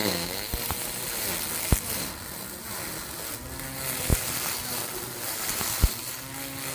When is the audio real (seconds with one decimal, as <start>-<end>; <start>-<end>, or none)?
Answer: 0.5-6.7